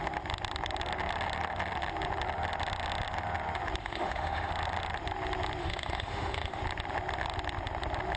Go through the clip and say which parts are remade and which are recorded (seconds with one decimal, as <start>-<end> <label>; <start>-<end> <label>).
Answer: 0.0-3.8 recorded; 3.8-4.5 remade; 4.5-5.6 recorded; 5.6-6.6 remade; 6.6-8.2 recorded